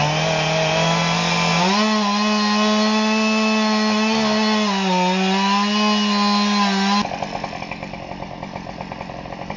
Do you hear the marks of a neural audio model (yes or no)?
no